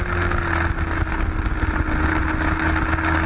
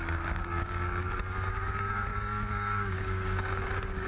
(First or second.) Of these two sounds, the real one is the first